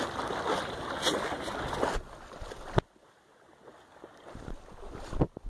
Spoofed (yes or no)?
no